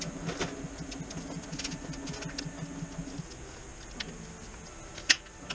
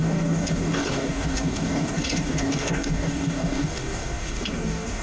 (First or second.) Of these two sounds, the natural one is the first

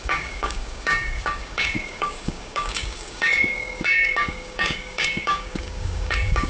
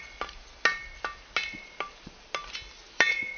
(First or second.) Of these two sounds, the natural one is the second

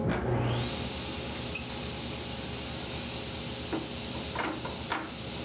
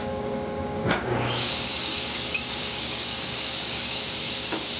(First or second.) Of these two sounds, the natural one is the first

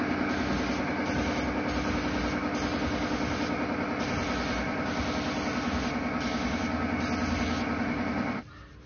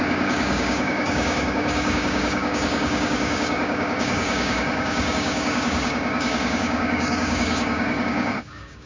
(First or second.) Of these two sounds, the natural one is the first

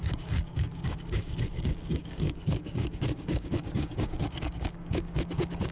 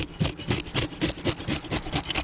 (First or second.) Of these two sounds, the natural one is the second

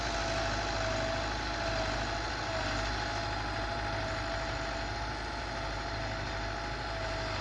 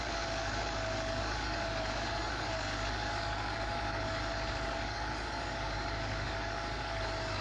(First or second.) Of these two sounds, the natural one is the first